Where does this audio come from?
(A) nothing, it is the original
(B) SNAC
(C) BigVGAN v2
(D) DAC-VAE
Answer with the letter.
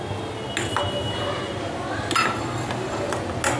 A